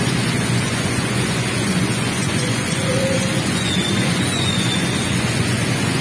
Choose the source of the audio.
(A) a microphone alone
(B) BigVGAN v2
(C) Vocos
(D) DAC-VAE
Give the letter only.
C